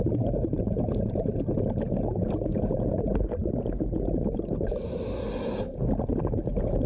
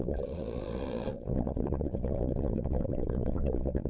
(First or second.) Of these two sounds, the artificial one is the second